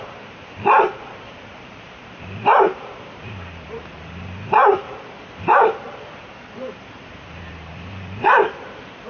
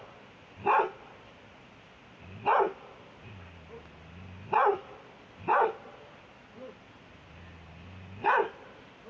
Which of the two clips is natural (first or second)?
second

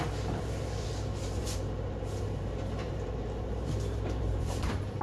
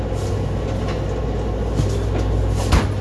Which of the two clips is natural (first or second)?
second